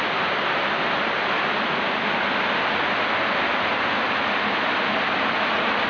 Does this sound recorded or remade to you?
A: recorded